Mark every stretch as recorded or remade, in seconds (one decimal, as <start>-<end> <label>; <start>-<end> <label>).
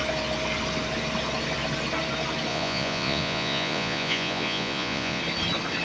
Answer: 0.0-2.5 recorded; 2.5-5.2 remade; 5.2-5.8 recorded